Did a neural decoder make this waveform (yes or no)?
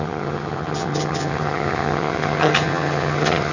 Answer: yes